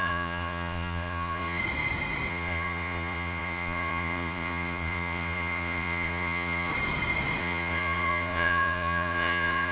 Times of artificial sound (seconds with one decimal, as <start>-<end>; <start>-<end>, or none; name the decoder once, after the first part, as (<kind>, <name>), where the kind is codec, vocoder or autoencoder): 0.0-1.6 (vocoder, Vocos); 2.3-6.7; 7.4-9.7